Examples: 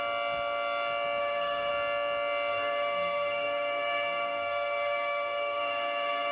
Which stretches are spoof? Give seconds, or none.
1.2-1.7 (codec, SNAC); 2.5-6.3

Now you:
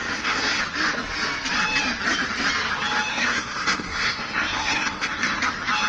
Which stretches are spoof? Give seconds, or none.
0.0-0.6 (codec, SNAC); 3.1-5.4

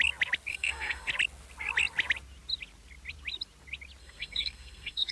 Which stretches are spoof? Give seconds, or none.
0.5-1.1 (codec, SNAC); 4.0-5.1

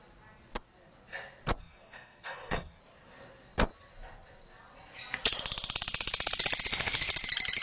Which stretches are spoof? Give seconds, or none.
1.6-2.8 (codec, SNAC)

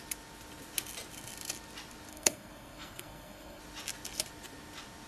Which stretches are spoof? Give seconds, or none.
2.1-3.6 (codec, SNAC)

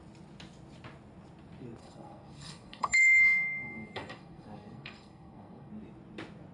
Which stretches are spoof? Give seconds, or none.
1.8-5.7 (codec, SNAC)

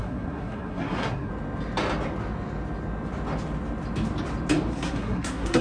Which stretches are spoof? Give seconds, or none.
0.0-1.3 (codec, SNAC); 4.7-5.6

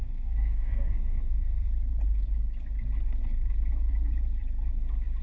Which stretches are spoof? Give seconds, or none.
0.0-1.7 (codec, SNAC)